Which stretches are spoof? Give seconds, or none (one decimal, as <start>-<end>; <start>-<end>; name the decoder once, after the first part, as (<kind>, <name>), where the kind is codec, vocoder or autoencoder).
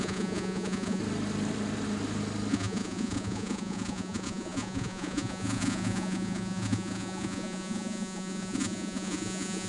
0.0-1.0 (vocoder, Vocos); 2.5-9.7